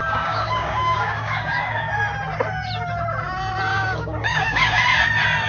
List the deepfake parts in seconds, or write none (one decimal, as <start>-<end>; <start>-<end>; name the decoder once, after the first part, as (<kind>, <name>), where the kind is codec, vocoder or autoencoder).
0.0-1.9 (codec, DAC); 3.7-4.8